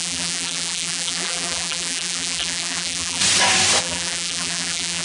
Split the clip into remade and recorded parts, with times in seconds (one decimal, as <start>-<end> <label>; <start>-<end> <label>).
0.0-3.2 remade; 3.2-3.8 recorded; 3.8-5.0 remade